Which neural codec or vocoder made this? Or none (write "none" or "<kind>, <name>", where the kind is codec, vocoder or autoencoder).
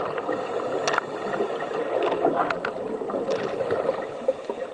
none